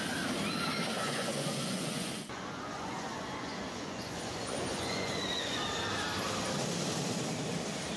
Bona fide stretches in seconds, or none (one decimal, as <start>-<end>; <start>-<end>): 0.0-1.0; 5.6-8.0